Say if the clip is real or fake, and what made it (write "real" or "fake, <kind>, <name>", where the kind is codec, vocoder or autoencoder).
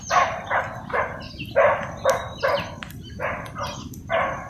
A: real